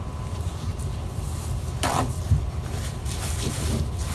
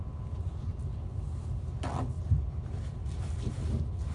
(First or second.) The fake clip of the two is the first